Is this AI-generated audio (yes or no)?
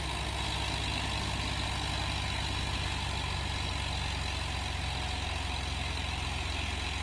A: no